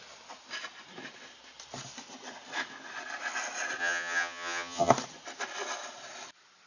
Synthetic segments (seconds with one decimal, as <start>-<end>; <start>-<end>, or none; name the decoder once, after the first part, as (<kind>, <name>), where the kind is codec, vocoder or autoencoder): 3.8-4.9 (vocoder, HiFi-GAN)